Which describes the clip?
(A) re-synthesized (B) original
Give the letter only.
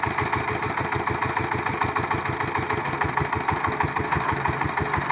B